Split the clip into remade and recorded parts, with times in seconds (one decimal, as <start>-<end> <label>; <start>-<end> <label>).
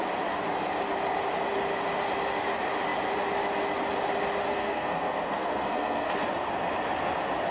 0.0-4.5 recorded; 4.5-6.1 remade; 6.1-7.5 recorded